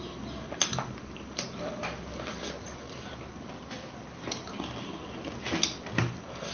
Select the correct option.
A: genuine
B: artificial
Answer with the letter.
A